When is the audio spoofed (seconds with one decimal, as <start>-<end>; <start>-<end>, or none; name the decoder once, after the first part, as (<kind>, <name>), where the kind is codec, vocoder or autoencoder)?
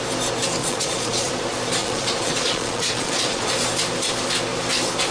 0.6-1.3 (vocoder, Vocos); 1.8-3.5